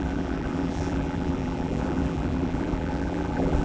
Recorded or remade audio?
remade